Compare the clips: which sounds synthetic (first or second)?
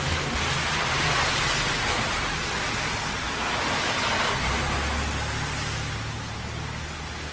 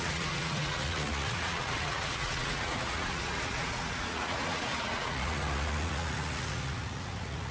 second